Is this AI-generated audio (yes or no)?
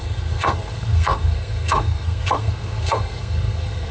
yes